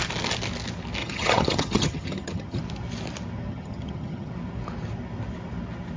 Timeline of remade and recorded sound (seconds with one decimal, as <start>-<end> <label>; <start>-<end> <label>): 0.0-1.0 recorded; 1.0-2.6 remade; 2.6-3.5 recorded; 3.5-4.3 remade; 4.3-6.0 recorded